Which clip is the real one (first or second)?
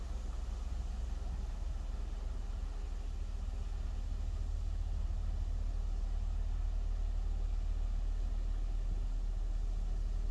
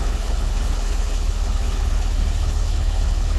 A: first